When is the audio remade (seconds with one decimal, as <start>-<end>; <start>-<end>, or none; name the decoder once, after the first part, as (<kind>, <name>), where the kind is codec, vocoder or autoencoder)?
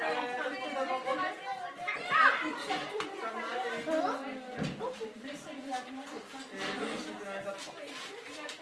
none